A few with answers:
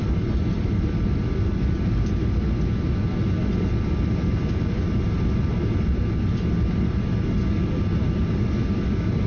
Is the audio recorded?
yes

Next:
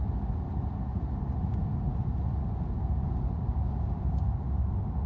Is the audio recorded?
yes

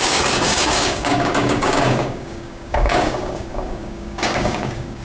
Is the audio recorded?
no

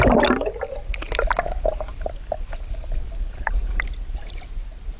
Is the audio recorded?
yes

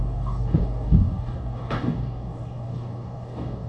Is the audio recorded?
no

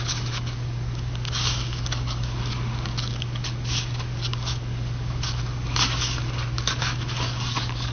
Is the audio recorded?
no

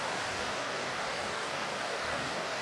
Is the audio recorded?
no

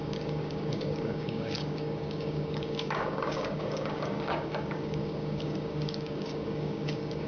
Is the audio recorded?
no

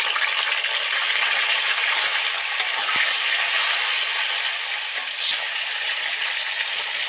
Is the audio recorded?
yes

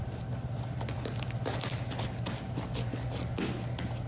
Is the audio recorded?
yes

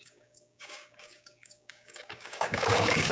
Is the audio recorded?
no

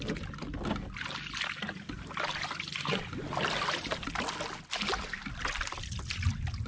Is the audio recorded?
yes